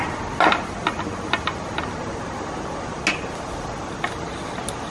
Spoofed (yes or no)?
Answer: no